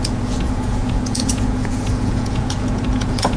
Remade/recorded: remade